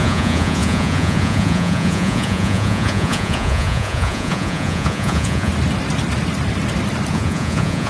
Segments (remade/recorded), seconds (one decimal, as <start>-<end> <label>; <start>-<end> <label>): 0.0-5.5 remade; 5.5-7.1 recorded; 7.1-7.9 remade